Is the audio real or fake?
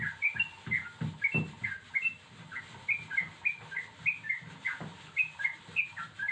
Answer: real